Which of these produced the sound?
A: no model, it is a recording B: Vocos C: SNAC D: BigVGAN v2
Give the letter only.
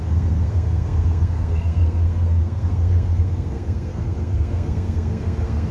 C